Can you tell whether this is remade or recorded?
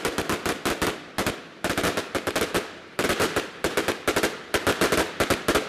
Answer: recorded